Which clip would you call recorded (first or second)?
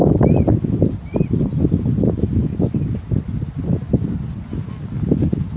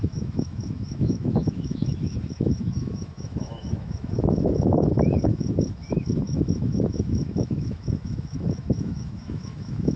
first